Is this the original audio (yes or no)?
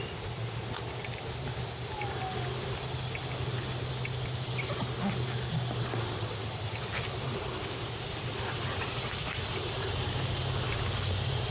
yes